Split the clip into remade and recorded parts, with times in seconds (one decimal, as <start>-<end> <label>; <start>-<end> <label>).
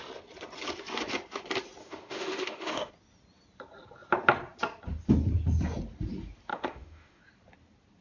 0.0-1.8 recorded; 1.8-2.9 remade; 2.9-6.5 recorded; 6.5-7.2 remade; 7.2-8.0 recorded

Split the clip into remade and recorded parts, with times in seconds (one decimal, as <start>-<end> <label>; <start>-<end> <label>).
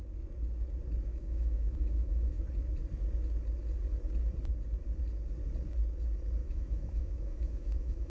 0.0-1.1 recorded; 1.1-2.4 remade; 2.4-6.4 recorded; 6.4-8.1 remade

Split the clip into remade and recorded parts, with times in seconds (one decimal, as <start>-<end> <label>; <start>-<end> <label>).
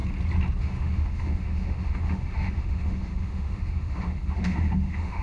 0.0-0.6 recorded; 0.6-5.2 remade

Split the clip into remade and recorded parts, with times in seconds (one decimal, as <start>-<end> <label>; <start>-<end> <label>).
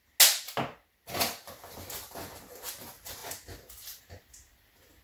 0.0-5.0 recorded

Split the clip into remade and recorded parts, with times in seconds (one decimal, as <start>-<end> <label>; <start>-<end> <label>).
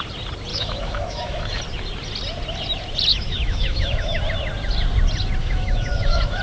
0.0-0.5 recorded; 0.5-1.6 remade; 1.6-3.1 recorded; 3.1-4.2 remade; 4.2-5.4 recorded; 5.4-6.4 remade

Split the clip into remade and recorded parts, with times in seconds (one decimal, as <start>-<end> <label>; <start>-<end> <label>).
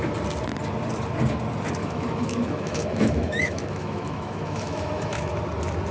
0.0-1.8 recorded; 1.8-5.3 remade; 5.3-5.9 recorded